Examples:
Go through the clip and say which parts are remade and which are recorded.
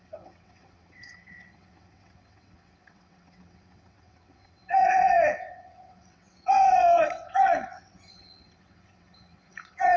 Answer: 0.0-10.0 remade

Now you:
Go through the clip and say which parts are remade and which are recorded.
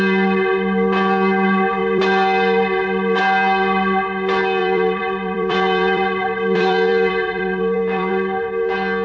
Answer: 0.0-4.6 recorded; 4.6-8.1 remade; 8.1-9.0 recorded